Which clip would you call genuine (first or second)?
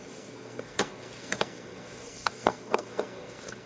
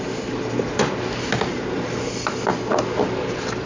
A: second